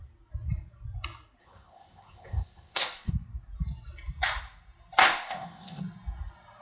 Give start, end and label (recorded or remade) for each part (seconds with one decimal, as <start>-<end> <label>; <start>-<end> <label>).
0.0-1.4 recorded; 1.4-3.1 remade; 3.1-5.0 recorded; 5.0-5.8 remade; 5.8-6.6 recorded